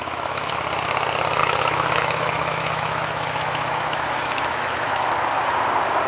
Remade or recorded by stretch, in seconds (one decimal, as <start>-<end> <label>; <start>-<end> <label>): 0.0-0.5 remade; 0.5-1.4 recorded; 1.4-5.1 remade; 5.1-6.1 recorded